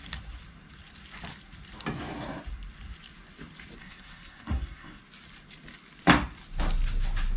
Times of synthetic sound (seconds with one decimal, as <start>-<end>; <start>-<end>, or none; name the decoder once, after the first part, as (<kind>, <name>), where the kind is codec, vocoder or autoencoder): 3.8-5.0 (codec, SNAC)